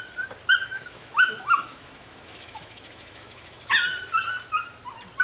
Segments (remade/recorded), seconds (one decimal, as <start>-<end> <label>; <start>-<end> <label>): 0.0-0.6 recorded; 0.6-3.7 remade; 3.7-5.2 recorded